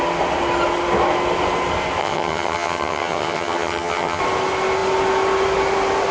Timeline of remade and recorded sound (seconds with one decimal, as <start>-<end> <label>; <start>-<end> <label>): 0.0-2.0 recorded; 2.0-4.2 remade; 4.2-6.1 recorded